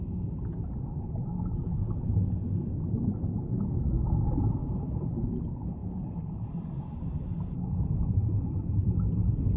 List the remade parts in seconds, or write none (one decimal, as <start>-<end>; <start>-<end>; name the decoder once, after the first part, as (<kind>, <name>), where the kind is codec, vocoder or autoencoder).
none